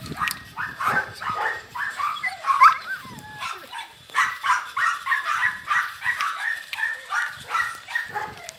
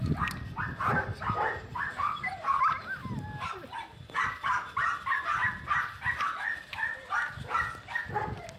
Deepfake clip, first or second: first